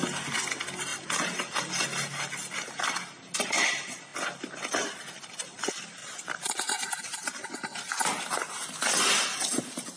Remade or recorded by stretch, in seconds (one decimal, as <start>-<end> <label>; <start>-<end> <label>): 0.0-0.9 recorded; 0.9-1.6 remade; 1.6-6.0 recorded; 6.0-8.2 remade; 8.2-10.0 recorded